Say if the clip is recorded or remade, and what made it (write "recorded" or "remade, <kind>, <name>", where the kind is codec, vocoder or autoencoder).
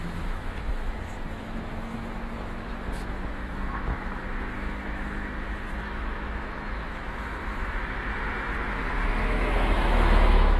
remade, autoencoder, DAC-VAE